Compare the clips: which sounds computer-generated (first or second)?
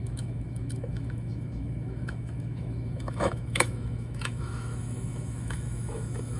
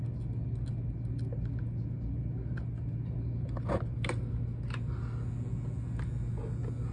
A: first